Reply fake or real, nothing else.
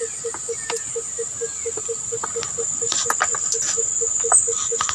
real